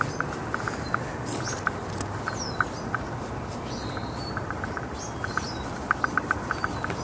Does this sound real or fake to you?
real